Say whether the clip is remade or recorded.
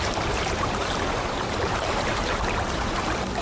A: remade